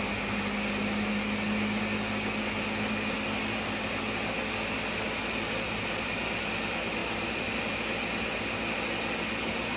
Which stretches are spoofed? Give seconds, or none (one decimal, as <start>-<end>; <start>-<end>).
none